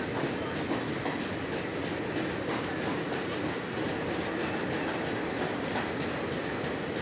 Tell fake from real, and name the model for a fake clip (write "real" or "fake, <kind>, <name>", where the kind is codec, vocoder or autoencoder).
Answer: real